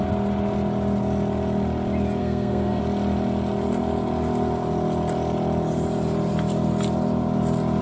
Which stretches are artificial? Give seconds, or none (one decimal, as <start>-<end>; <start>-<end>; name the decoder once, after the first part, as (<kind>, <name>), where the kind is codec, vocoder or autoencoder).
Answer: 2.2-2.8 (codec, SNAC)